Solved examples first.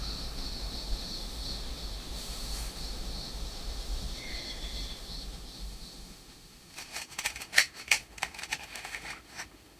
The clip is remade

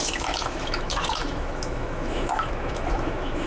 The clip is remade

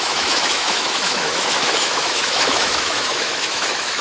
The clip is remade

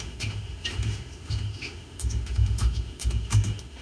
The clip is remade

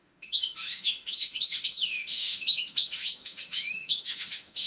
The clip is remade